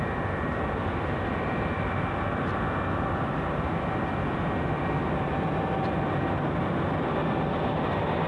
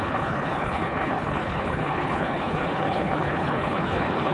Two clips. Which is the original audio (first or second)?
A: first